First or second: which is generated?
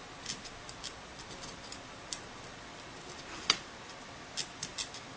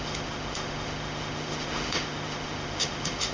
second